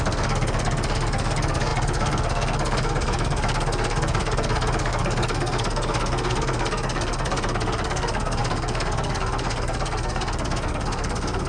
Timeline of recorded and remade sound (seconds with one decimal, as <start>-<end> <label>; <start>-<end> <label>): 0.0-11.5 remade